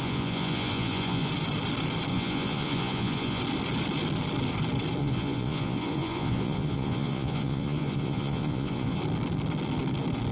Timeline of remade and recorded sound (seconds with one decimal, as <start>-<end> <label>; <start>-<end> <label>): 0.0-1.3 remade; 1.3-2.1 recorded; 2.1-3.4 remade; 3.4-5.0 recorded; 5.0-9.0 remade; 9.0-10.3 recorded